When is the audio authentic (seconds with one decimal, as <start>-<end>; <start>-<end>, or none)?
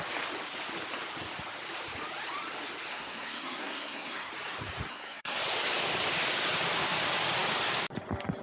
0.0-2.9; 4.3-4.9; 5.4-8.4